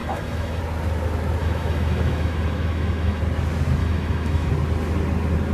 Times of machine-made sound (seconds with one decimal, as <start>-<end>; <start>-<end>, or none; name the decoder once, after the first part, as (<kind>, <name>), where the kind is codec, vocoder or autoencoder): 0.0-0.6 (autoencoder, DAC-VAE); 1.4-3.2; 3.8-4.5

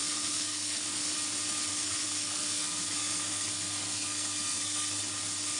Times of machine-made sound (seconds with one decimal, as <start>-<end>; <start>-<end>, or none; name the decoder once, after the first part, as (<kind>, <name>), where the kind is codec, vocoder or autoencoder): 0.0-1.1 (codec, SNAC); 1.7-5.0

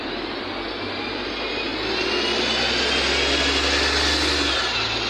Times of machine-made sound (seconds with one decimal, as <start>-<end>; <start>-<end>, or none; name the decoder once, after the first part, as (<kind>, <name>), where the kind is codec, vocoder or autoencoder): 0.0-1.7 (vocoder, BigVGAN v2)

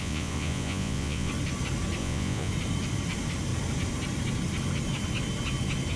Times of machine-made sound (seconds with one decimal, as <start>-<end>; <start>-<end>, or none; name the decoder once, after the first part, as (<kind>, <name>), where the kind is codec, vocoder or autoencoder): 0.0-1.3 (vocoder, Vocos); 2.0-2.5

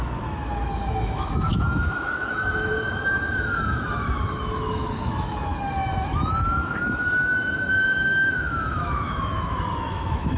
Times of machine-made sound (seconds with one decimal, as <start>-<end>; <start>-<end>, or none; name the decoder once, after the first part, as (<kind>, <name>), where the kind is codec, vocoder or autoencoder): 0.0-10.4 (autoencoder, DAC-VAE)

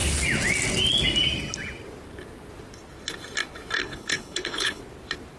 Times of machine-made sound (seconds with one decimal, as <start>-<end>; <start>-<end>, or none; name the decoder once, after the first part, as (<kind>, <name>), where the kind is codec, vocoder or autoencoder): 3.8-4.8 (codec, HILCodec)

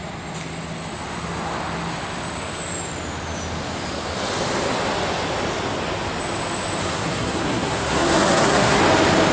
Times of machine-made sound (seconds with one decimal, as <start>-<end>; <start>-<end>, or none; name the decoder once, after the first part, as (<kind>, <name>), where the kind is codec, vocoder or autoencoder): 6.8-8.8 (codec, SNAC)

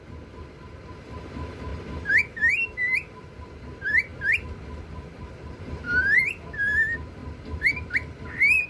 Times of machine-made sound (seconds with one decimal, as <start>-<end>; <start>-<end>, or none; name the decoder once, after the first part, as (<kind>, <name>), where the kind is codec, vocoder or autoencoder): none